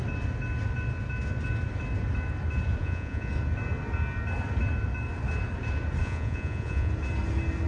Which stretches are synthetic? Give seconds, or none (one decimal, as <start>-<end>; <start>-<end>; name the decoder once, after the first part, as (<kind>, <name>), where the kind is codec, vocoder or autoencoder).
2.8-3.3 (vocoder, Vocos); 6.0-6.9